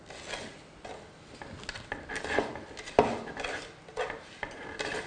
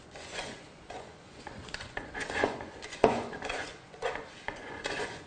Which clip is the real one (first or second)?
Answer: first